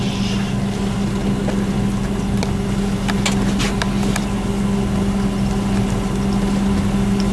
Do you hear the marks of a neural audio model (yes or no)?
no